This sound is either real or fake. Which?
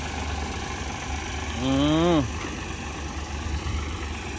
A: real